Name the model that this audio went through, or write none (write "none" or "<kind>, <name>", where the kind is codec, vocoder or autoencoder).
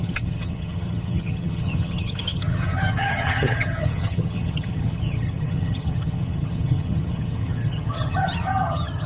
vocoder, HiFi-GAN